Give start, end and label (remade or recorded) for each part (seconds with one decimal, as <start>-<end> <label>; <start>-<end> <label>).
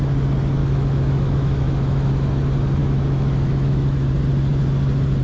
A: 0.0-0.6 recorded; 0.6-2.1 remade; 2.1-2.8 recorded; 2.8-4.1 remade; 4.1-5.2 recorded